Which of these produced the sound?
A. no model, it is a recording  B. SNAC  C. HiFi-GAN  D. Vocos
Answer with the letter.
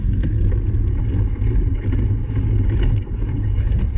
A